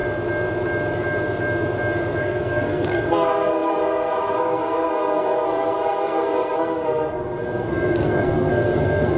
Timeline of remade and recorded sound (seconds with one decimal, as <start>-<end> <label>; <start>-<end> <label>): 0.0-2.2 recorded; 2.2-9.2 remade